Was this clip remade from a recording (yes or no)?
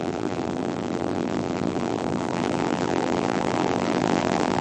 yes